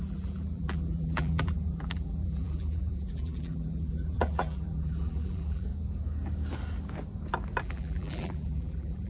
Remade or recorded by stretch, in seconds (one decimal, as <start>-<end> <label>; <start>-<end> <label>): 0.0-5.7 remade; 5.7-7.6 recorded; 7.6-9.1 remade